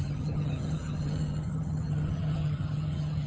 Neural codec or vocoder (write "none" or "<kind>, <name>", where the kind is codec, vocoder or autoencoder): vocoder, HiFi-GAN